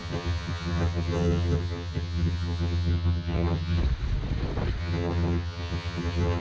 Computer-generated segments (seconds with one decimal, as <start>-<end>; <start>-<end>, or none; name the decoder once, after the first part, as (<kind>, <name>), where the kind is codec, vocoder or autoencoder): 0.0-3.8 (vocoder, HiFi-GAN); 4.8-6.4